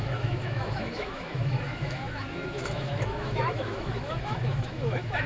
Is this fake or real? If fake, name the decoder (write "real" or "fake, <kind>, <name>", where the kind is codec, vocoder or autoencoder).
fake, autoencoder, DAC-VAE